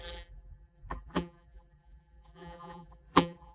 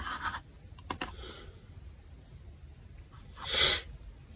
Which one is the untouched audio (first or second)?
second